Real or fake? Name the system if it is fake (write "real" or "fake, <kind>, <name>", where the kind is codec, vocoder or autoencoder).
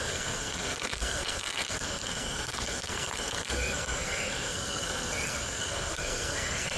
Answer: fake, codec, SNAC